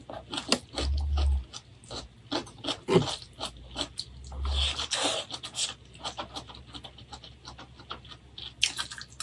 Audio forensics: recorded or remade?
recorded